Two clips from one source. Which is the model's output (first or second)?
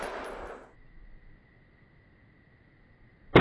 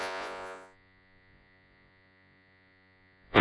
second